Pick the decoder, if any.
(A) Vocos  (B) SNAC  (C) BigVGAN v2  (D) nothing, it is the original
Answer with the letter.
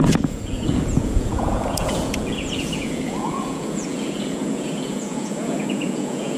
A